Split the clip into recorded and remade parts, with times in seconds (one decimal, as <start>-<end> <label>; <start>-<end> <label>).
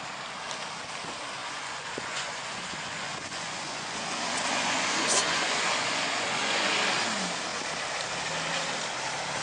0.0-1.4 recorded; 1.4-6.7 remade; 6.7-9.4 recorded